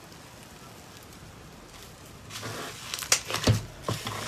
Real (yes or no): yes